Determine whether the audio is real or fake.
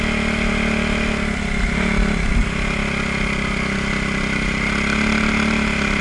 real